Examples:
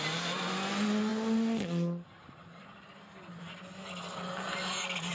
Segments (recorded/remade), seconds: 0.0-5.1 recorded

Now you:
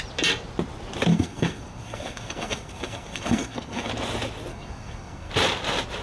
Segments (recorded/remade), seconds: 0.0-1.1 recorded; 1.1-3.9 remade; 3.9-4.5 recorded; 4.5-5.3 remade; 5.3-6.0 recorded

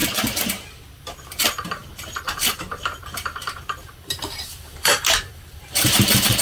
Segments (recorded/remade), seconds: 0.0-1.4 recorded; 1.4-6.4 remade

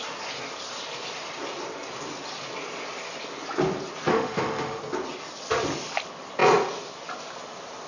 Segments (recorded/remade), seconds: 0.0-4.1 recorded; 4.1-4.8 remade; 4.8-7.9 recorded

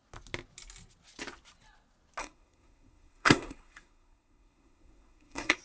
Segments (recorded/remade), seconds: 0.0-2.2 recorded; 2.2-5.6 remade

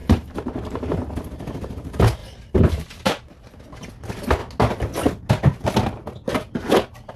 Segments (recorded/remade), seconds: 0.0-1.1 remade; 1.1-2.2 recorded; 2.2-3.9 remade; 3.9-7.2 recorded

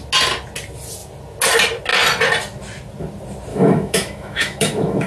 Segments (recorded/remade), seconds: 0.0-3.5 recorded; 3.5-5.1 remade